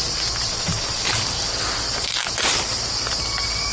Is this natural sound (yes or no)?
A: yes